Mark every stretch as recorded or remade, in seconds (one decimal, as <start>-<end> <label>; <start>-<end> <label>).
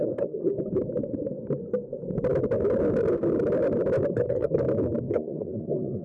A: 0.0-0.5 remade; 0.5-4.1 recorded; 4.1-4.6 remade; 4.6-5.1 recorded; 5.1-6.0 remade